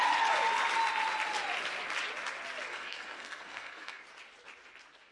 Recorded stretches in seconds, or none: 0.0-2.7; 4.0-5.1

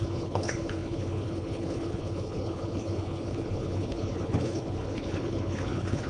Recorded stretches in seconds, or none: none

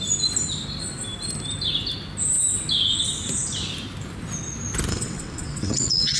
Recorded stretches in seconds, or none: 0.0-4.9

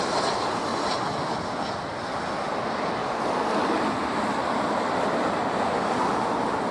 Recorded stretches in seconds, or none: 0.0-6.7

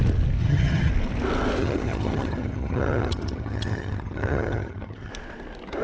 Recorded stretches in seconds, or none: 0.0-0.4; 0.9-1.6; 5.1-5.8

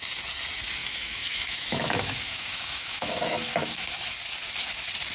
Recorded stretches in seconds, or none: 0.0-0.8; 3.9-5.1